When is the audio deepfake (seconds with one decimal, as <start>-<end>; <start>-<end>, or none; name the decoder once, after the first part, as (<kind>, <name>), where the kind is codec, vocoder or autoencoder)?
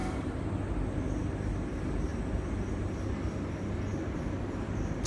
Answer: none